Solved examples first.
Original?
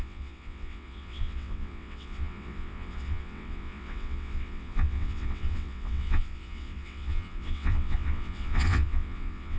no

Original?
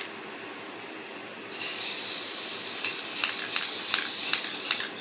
yes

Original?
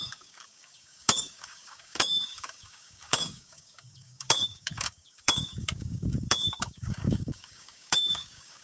no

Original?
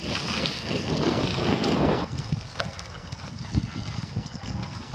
no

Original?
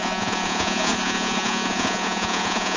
no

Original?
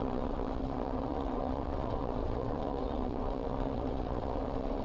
no